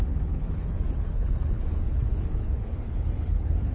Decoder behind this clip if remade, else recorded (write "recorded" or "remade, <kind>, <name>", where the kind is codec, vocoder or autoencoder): remade, codec, HILCodec